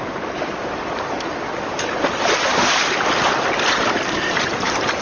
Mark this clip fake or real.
fake